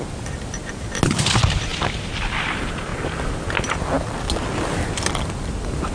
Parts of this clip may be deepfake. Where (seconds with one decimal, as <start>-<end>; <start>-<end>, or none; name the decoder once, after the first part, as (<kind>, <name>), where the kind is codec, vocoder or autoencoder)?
none